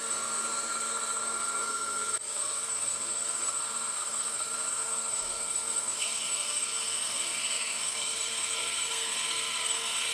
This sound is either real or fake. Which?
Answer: fake